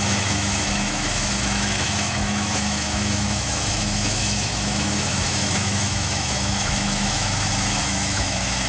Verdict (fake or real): fake